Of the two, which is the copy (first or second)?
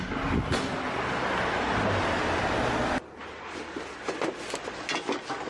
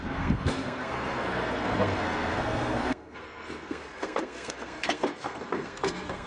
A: second